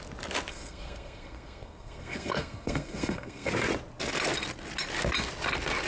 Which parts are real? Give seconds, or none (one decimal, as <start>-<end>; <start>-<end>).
0.0-0.5; 3.5-5.9